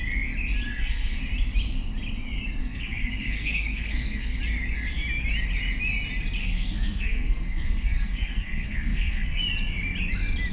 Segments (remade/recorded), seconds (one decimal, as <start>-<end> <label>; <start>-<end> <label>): 0.0-0.7 recorded; 0.7-1.2 remade; 1.2-2.6 recorded; 2.6-4.4 remade; 4.4-6.4 recorded; 6.4-9.4 remade; 9.4-10.5 recorded